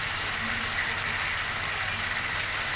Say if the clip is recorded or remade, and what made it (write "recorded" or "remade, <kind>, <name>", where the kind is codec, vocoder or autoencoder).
recorded